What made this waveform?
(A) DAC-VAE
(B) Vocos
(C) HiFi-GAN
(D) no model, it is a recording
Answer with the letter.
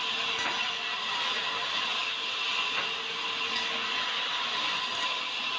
D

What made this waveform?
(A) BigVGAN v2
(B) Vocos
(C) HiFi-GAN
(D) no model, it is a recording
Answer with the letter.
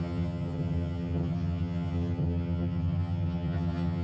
C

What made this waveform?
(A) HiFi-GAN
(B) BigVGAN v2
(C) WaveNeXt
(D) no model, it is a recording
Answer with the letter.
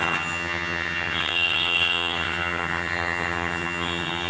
A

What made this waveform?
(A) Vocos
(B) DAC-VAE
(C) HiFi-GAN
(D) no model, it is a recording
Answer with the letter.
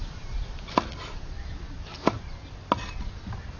D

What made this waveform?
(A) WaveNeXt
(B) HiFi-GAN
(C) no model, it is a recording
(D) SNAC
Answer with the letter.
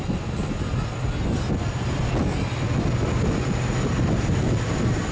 C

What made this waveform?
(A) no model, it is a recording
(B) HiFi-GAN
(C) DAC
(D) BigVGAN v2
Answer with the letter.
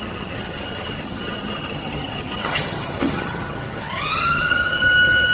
B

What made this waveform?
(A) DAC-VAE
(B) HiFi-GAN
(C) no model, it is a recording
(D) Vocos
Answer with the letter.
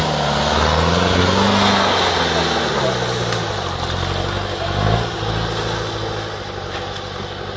C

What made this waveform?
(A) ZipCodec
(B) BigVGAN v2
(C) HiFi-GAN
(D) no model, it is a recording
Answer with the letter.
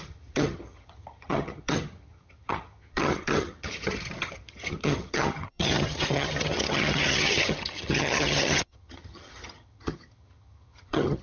C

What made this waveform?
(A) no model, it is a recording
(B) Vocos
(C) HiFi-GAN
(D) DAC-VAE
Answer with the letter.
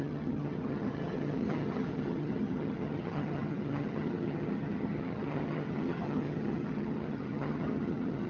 C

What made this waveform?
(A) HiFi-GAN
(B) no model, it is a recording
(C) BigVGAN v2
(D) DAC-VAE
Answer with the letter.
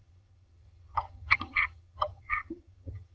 A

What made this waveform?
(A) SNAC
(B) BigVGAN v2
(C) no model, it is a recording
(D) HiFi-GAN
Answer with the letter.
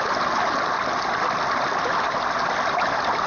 C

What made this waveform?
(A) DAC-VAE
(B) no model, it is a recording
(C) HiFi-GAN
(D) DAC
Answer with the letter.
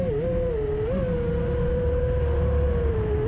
B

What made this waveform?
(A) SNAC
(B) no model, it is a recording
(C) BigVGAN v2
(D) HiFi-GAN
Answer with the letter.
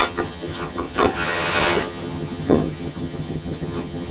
D